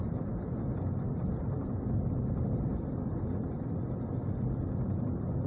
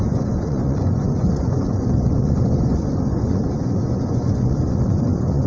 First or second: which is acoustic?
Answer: first